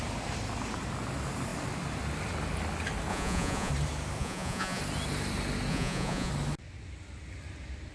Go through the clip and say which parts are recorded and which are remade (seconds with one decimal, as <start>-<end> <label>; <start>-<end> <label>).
0.0-3.1 recorded; 3.1-3.7 remade; 3.7-4.2 recorded; 4.2-4.8 remade; 4.8-5.7 recorded; 5.7-6.3 remade; 6.3-7.9 recorded